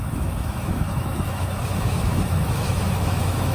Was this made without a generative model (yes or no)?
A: no